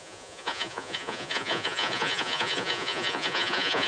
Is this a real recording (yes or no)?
no